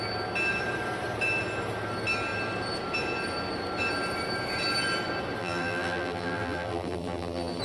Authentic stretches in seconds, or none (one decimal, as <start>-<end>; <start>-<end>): 0.0-5.4